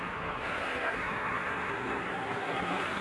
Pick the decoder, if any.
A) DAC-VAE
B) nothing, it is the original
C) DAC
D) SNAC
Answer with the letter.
D